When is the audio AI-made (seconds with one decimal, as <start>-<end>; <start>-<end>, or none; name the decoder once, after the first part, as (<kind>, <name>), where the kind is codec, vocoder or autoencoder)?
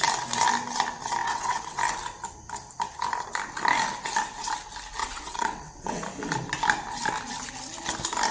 1.2-1.8 (vocoder, WaveNeXt); 5.0-6.0